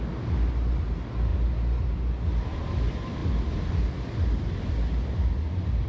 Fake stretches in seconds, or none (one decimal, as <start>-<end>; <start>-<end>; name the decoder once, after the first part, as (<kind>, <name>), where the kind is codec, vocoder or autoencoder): none